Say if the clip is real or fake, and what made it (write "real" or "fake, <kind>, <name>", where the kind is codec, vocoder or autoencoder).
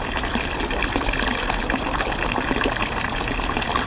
real